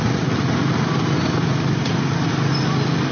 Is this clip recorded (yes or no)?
yes